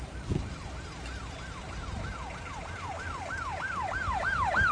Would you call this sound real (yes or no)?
yes